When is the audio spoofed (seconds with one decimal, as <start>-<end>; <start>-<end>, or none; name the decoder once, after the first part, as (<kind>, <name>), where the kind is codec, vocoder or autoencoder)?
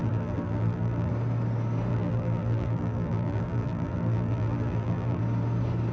0.0-1.1 (vocoder, BigVGAN v2); 1.9-5.2